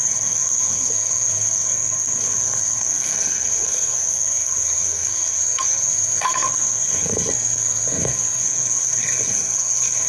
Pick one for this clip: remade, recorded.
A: remade